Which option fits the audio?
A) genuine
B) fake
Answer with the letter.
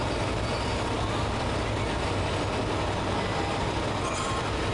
A